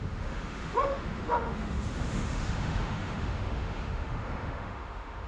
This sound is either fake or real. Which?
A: fake